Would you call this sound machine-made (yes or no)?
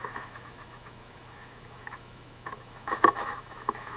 yes